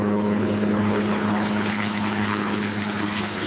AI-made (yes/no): yes